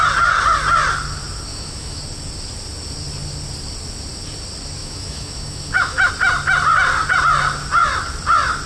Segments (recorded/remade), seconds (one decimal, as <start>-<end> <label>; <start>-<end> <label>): 0.0-1.5 recorded; 1.5-2.0 remade; 2.0-4.8 recorded; 4.8-6.1 remade; 6.1-8.7 recorded